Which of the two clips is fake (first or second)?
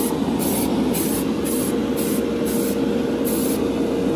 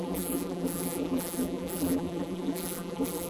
second